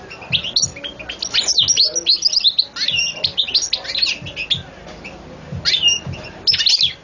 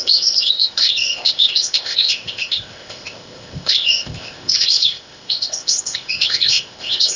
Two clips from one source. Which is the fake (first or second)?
second